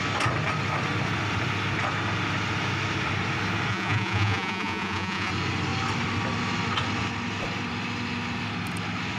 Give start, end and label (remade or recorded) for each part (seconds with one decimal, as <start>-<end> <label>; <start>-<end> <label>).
0.0-3.7 recorded; 3.7-5.3 remade; 5.3-9.2 recorded